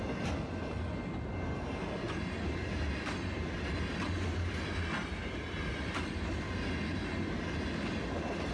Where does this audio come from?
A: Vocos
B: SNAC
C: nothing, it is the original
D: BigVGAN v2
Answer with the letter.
C